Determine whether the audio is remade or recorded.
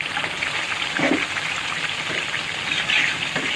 recorded